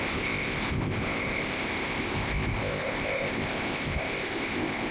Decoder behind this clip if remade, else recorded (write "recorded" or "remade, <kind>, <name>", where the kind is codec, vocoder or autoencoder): remade, codec, ZipCodec